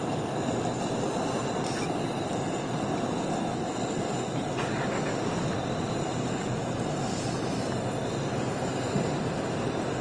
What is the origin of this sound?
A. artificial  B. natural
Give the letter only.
B